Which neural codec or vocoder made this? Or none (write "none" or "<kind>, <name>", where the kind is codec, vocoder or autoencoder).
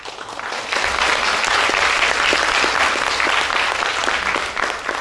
none